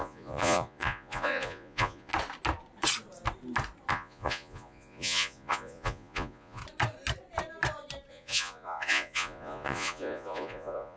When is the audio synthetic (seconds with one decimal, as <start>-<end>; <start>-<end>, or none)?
0.0-2.1; 3.9-6.6; 8.1-11.0